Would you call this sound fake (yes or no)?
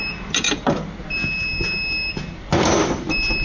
no